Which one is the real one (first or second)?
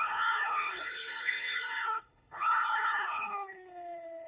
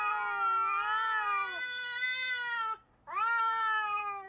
second